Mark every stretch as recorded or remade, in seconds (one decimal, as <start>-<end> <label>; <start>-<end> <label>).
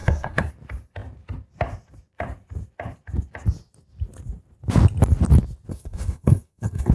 0.0-0.5 remade; 0.5-5.7 recorded; 5.7-6.9 remade